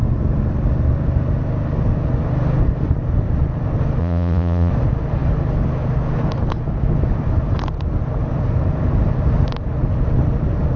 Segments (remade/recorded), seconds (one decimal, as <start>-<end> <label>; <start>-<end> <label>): 0.0-4.0 recorded; 4.0-4.7 remade; 4.7-10.8 recorded